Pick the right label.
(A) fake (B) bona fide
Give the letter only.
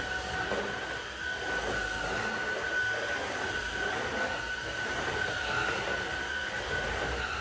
B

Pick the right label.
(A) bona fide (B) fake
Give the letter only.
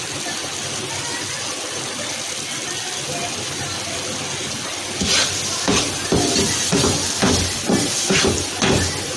A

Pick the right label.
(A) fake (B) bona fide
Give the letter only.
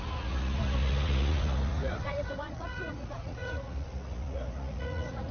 A